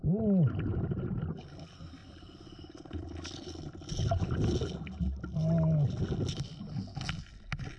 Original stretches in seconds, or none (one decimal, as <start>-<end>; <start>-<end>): 0.0-2.0; 3.7-7.8